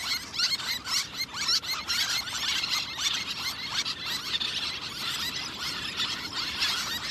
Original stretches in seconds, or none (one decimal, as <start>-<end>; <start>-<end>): none